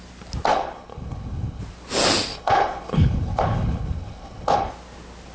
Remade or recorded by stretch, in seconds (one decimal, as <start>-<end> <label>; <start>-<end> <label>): 0.0-0.5 recorded; 0.5-1.6 remade; 1.6-2.3 recorded; 2.3-4.7 remade; 4.7-5.3 recorded